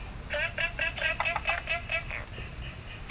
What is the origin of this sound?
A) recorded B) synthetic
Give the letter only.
A